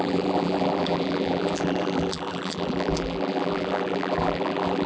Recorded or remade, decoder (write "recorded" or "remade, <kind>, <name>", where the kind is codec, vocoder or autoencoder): remade, vocoder, BigVGAN v2